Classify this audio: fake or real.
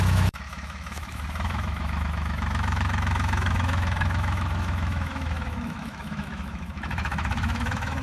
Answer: fake